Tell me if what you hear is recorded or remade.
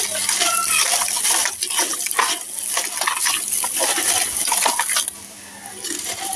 recorded